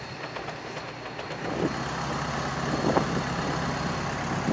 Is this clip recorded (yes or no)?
yes